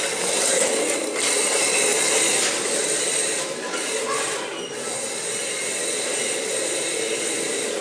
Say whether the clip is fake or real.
real